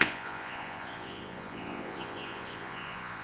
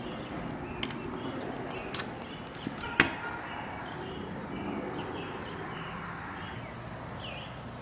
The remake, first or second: first